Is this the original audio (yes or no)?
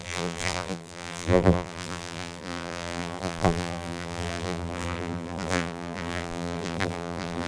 no